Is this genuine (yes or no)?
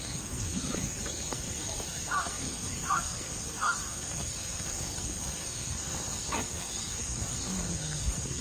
no